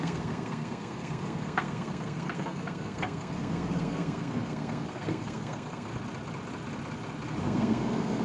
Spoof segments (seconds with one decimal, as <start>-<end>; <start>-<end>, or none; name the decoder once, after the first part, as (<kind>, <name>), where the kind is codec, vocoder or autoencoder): 0.0-5.9 (codec, SNAC); 7.4-8.2